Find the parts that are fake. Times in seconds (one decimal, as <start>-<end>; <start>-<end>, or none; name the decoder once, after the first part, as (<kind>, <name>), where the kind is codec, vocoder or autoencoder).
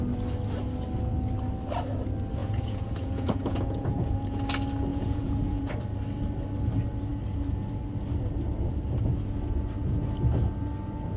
2.4-4.4 (vocoder, Vocos); 4.9-5.7